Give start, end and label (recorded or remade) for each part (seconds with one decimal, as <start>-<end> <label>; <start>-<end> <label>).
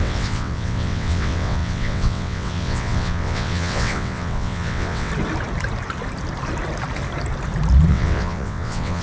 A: 0.0-5.1 remade; 5.1-7.9 recorded; 7.9-9.0 remade